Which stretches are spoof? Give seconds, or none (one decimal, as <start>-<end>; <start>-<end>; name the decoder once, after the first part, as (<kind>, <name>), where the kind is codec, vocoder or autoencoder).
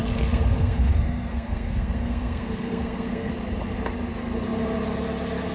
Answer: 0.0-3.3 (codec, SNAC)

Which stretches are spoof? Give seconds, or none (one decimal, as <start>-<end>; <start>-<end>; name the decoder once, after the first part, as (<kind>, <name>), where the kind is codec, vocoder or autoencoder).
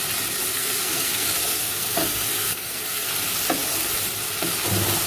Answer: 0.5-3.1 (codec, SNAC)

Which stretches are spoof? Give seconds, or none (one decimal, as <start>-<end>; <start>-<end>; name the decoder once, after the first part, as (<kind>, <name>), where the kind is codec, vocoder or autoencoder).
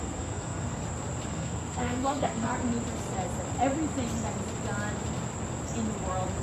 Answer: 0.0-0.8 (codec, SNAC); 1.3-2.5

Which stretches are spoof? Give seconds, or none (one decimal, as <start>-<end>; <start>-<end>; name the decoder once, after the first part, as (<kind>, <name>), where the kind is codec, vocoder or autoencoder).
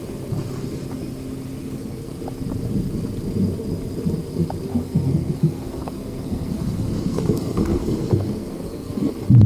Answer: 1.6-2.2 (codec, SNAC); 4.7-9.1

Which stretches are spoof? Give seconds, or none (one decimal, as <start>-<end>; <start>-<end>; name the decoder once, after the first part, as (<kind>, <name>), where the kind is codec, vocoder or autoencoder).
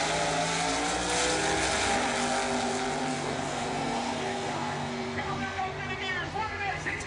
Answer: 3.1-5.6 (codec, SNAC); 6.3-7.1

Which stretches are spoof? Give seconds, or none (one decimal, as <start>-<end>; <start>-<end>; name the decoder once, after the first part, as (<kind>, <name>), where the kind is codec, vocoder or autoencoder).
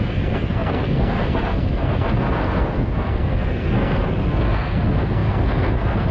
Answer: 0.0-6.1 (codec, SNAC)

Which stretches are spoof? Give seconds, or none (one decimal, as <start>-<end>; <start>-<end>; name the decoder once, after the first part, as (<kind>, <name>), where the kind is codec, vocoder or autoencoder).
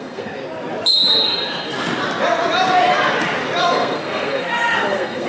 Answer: 0.0-0.4 (codec, SNAC); 3.6-5.3